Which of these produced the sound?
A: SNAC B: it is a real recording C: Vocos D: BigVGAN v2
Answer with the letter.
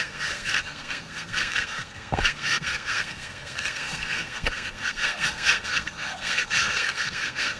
A